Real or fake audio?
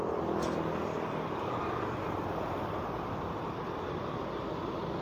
real